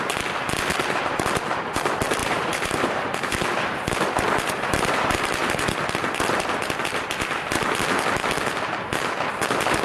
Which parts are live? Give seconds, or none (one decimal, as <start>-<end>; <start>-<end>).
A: 0.0-2.2; 3.3-9.8